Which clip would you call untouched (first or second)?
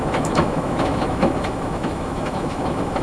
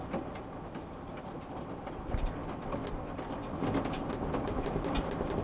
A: second